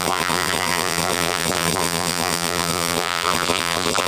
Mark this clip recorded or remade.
remade